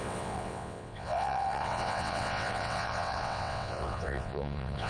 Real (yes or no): no